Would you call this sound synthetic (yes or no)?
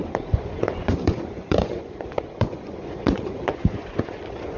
yes